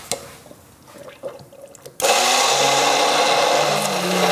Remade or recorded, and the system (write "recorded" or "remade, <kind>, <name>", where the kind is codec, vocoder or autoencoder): recorded